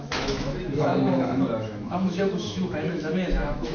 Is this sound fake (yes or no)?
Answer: yes